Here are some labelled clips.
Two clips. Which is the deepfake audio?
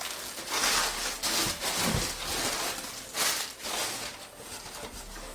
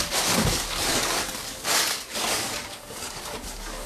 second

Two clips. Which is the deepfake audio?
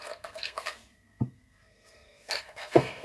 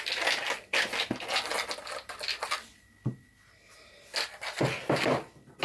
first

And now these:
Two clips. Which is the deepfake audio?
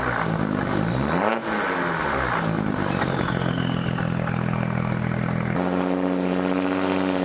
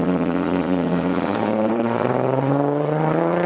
second